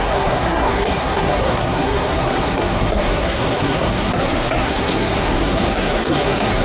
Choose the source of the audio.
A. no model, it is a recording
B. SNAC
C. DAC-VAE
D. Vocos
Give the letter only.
B